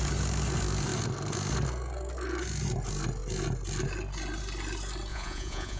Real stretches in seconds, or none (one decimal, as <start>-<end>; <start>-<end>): 0.0-5.1